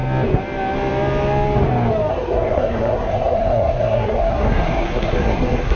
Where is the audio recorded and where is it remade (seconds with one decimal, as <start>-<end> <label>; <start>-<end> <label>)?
0.0-2.1 recorded; 2.1-5.8 remade